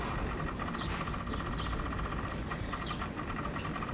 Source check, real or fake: real